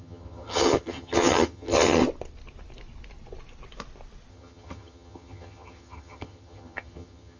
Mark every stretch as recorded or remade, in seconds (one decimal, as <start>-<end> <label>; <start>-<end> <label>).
0.0-2.0 remade; 2.0-4.3 recorded; 4.3-7.4 remade